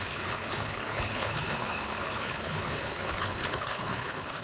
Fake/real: fake